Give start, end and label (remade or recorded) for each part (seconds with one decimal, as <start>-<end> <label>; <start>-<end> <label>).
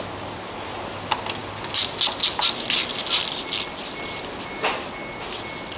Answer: 0.0-5.8 recorded